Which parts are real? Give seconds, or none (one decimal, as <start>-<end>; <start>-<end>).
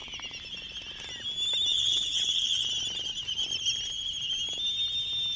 0.0-1.7; 2.6-5.4